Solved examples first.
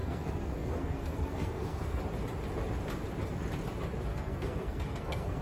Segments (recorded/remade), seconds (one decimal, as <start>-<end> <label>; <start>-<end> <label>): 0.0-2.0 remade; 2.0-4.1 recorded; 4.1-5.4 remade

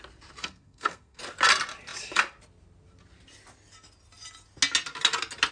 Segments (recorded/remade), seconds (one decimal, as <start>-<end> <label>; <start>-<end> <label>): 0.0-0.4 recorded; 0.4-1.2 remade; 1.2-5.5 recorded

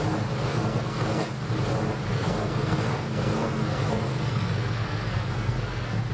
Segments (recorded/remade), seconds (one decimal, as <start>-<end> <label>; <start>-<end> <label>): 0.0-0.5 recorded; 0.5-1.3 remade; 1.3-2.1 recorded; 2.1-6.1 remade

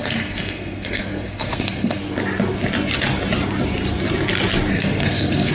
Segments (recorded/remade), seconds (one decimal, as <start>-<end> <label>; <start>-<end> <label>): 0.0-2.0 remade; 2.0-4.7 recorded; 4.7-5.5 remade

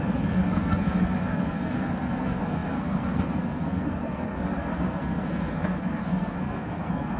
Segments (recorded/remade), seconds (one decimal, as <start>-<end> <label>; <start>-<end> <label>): 0.0-7.2 remade

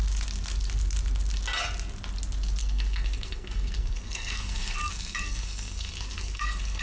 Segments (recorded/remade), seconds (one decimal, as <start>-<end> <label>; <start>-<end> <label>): 0.0-2.6 recorded; 2.6-6.8 remade

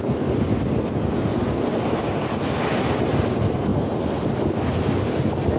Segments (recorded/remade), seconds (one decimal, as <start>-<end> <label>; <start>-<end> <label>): 0.0-5.6 recorded

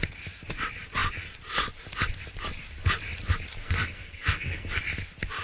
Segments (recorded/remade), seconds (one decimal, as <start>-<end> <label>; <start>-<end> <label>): 0.0-3.6 recorded; 3.6-4.8 remade; 4.8-5.4 recorded